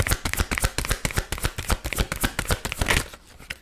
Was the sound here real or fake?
real